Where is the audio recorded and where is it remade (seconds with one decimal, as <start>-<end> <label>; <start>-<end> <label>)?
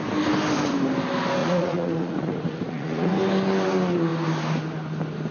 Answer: 0.0-1.4 recorded; 1.4-3.1 remade; 3.1-5.3 recorded